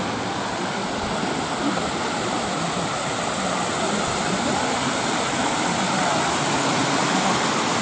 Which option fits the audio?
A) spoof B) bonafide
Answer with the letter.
B